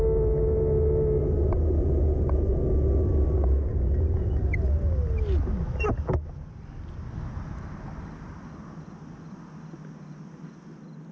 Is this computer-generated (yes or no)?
no